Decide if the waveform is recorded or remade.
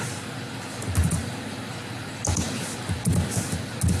recorded